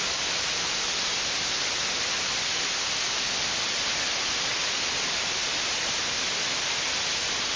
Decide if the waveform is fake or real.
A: real